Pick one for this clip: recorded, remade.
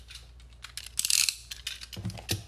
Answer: recorded